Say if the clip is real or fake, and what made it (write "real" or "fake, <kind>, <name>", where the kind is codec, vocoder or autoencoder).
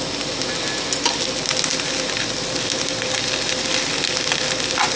real